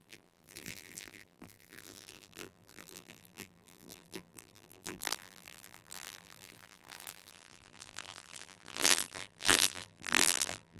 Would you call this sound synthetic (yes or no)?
yes